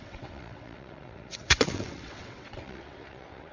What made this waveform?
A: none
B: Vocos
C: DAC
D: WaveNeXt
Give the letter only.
D